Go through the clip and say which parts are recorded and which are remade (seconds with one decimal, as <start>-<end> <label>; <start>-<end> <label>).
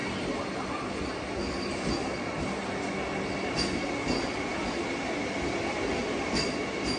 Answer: 0.0-7.0 recorded